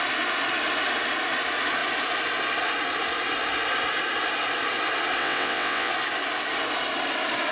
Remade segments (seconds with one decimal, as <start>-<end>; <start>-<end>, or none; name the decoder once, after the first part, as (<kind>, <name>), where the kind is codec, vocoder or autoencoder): 5.2-5.9 (vocoder, WaveNeXt)